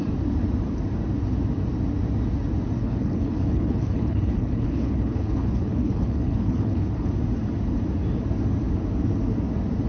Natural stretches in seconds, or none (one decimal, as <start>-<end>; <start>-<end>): 0.0-2.8; 7.1-9.9